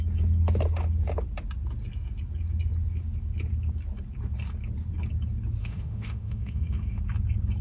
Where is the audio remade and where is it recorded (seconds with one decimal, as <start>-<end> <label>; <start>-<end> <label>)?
0.0-5.6 recorded; 5.6-7.0 remade; 7.0-7.6 recorded